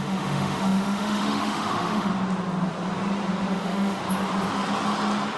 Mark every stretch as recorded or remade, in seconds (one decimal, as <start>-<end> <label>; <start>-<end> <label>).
0.0-2.1 remade; 2.1-3.5 recorded; 3.5-4.0 remade; 4.0-5.4 recorded